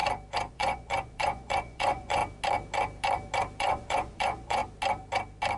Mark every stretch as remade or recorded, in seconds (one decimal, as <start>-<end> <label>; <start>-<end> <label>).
0.0-0.5 recorded; 0.5-2.2 remade; 2.2-3.6 recorded; 3.6-4.6 remade; 4.6-5.6 recorded